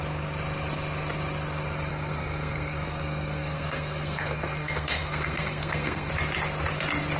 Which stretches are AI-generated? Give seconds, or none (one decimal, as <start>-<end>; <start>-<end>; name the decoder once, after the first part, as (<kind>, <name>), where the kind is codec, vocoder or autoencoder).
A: 1.9-6.1 (codec, SNAC)